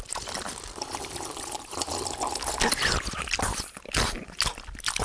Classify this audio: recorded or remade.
recorded